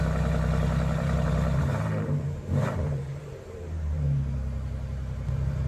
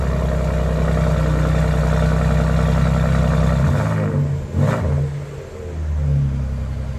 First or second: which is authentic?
second